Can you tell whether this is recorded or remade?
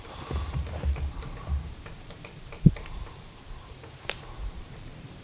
remade